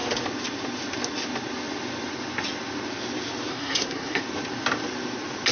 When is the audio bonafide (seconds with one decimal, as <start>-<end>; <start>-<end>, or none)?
0.0-3.5; 4.2-5.5